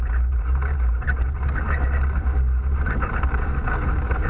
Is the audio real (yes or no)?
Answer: no